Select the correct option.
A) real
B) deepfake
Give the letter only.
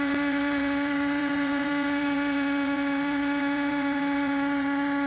B